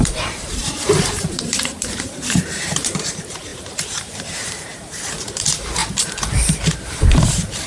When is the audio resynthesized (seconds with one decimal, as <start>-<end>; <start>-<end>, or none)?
0.0-7.7